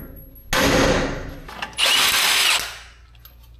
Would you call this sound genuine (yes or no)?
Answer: yes